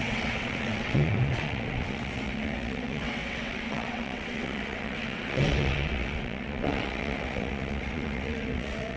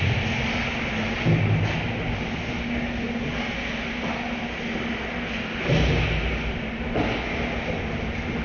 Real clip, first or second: second